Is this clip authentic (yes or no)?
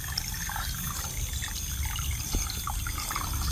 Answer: yes